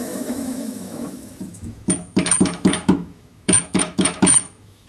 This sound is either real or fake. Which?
fake